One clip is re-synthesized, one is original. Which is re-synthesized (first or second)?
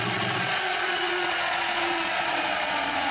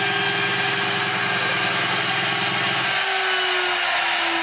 first